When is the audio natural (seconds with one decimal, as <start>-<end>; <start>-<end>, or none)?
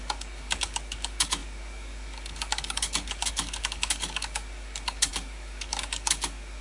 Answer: none